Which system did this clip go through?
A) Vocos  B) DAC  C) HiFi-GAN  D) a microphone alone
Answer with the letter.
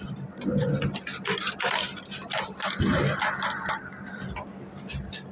D